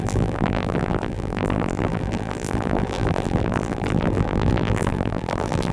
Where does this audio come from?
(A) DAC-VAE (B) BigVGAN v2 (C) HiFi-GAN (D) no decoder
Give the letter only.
B